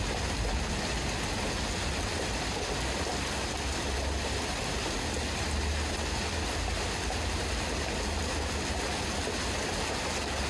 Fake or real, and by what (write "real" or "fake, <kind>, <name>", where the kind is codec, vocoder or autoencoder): real